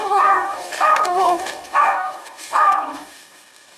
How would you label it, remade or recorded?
remade